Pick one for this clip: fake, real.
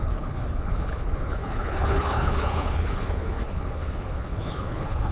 fake